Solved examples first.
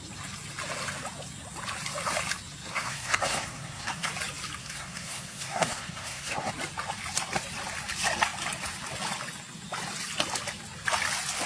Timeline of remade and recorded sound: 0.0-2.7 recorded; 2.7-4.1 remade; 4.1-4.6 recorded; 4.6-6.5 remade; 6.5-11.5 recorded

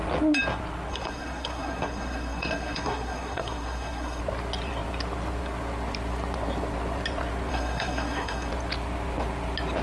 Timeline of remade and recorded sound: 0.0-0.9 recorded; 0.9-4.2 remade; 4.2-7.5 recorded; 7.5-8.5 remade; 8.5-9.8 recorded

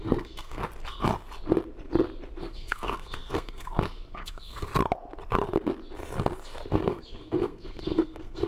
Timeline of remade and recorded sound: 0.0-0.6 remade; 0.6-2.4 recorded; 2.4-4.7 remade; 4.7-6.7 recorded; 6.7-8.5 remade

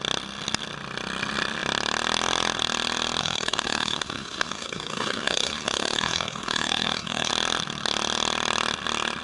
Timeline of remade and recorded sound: 0.0-3.2 recorded; 3.2-7.3 remade; 7.3-9.2 recorded